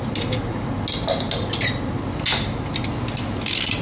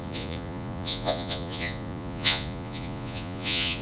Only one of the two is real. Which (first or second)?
first